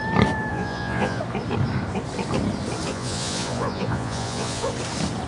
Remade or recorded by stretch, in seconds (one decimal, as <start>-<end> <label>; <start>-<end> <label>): 0.0-0.5 recorded; 0.5-1.2 remade; 1.2-2.9 recorded; 2.9-4.7 remade; 4.7-5.3 recorded